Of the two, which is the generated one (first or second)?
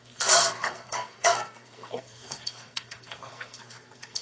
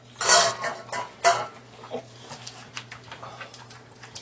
first